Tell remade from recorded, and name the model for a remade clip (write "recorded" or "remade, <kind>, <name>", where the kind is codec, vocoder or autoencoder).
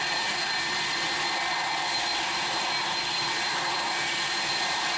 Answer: remade, vocoder, BigVGAN v2